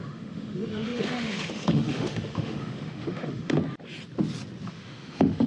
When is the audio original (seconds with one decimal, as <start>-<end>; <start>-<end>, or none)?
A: 3.6-4.7